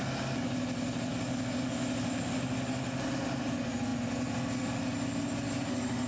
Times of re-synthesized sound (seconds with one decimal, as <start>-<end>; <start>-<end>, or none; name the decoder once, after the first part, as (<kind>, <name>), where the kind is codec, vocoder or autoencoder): none

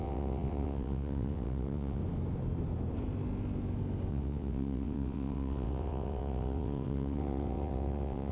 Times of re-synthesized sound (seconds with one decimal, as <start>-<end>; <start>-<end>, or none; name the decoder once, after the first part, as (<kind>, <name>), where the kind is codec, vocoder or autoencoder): 0.0-2.0 (vocoder, WaveNeXt); 4.1-8.3

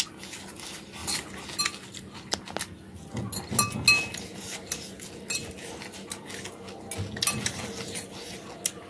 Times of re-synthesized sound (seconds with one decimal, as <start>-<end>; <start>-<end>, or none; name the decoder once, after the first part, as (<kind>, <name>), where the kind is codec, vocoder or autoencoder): none